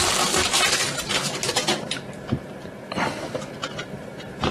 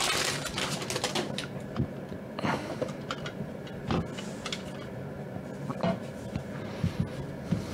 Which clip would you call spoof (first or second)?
first